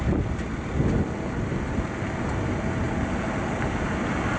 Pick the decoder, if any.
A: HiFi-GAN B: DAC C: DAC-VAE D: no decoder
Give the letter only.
D